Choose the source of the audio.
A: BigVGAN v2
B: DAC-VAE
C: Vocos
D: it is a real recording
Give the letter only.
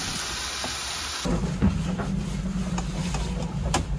D